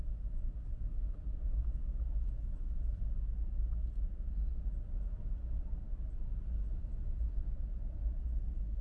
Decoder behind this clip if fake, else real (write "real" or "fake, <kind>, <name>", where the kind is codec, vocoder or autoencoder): real